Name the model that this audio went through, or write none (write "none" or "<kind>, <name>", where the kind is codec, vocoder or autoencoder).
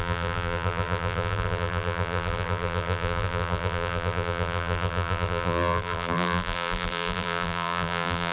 vocoder, BigVGAN v2